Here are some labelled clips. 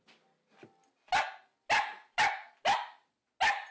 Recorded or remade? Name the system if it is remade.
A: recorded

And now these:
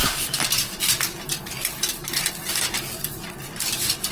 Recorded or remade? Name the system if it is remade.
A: remade, vocoder, BigVGAN v2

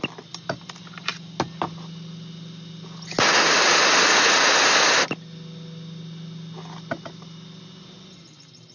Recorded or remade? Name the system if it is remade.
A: recorded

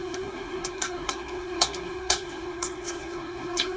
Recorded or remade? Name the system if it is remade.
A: remade, codec, SNAC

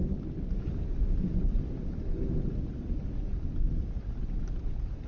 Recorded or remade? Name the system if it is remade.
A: recorded